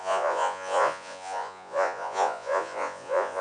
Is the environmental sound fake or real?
fake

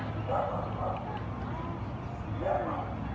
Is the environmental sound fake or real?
real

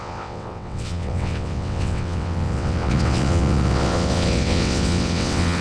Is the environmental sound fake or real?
fake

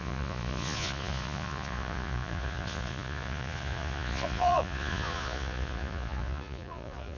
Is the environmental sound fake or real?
fake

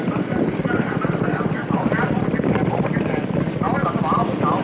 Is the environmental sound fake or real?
real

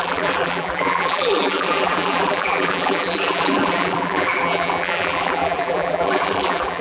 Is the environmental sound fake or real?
fake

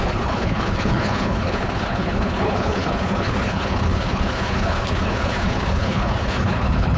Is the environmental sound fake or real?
fake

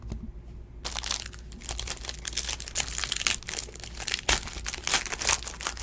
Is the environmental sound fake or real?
real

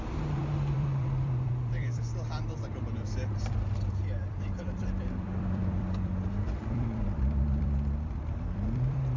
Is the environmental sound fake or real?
fake